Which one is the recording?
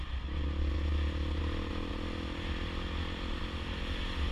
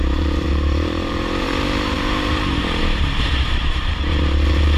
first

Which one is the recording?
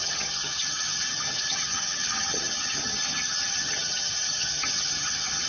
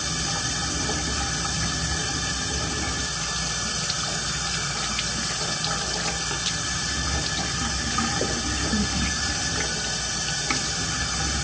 second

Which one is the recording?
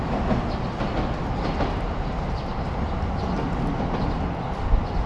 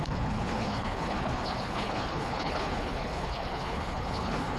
first